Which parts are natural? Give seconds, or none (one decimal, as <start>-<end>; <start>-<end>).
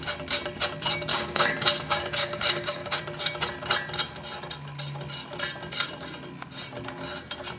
0.0-1.1; 3.0-7.6